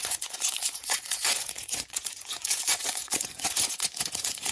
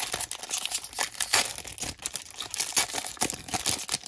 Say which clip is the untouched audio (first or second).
second